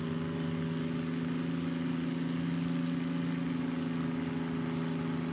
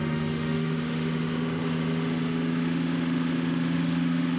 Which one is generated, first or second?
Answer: second